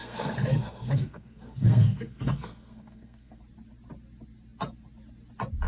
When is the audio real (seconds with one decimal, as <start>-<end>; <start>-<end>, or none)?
3.4-5.7

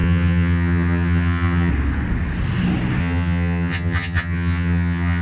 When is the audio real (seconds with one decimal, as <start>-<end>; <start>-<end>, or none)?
1.7-3.0

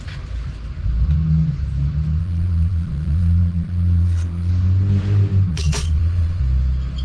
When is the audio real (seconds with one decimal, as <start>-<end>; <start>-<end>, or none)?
0.0-2.2; 4.5-5.5; 6.4-7.0

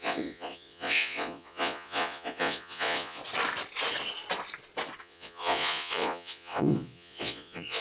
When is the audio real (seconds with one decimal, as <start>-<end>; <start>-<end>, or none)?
3.2-5.0